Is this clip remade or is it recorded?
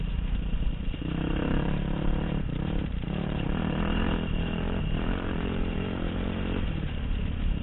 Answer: remade